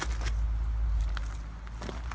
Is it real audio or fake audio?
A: real